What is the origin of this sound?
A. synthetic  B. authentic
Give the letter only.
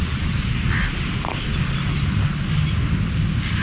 B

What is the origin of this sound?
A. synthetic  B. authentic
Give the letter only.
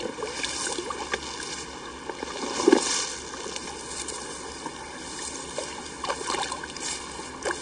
B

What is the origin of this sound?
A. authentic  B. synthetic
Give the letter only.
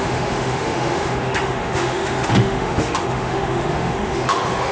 B